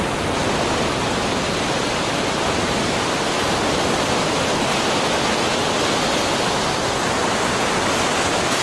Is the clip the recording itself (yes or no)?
yes